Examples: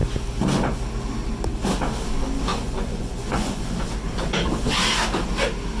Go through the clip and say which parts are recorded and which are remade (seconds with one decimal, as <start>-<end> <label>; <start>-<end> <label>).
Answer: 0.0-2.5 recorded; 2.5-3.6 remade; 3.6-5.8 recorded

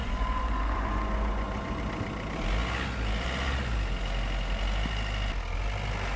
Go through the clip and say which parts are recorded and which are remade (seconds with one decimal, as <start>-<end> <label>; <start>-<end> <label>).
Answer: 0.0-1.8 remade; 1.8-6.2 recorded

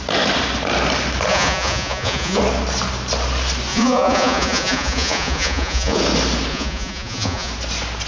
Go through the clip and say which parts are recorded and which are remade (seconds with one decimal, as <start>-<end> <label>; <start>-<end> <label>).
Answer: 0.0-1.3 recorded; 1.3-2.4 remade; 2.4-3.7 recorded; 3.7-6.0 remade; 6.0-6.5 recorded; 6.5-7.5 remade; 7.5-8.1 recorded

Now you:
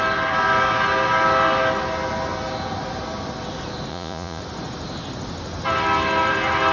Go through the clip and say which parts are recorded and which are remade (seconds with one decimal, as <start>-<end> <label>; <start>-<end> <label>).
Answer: 0.0-3.9 recorded; 3.9-4.4 remade; 4.4-6.7 recorded

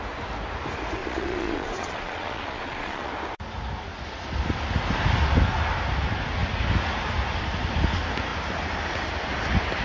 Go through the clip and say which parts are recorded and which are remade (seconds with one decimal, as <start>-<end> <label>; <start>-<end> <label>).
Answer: 0.0-1.0 recorded; 1.0-3.1 remade; 3.1-9.8 recorded

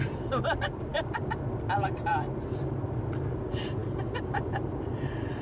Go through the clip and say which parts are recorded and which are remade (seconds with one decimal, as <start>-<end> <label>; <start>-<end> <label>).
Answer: 0.0-5.4 recorded

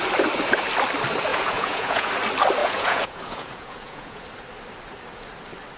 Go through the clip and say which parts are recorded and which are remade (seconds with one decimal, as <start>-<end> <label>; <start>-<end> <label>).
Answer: 0.0-1.3 recorded; 1.3-2.1 remade; 2.1-2.6 recorded; 2.6-4.2 remade; 4.2-5.8 recorded

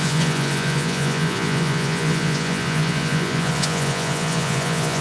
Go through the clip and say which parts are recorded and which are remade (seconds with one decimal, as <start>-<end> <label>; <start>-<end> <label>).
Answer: 0.0-5.0 remade